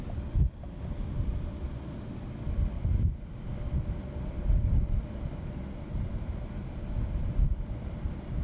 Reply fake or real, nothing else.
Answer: real